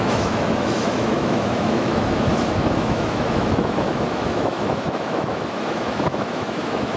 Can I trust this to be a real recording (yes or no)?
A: no